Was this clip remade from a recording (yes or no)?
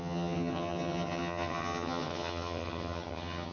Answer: yes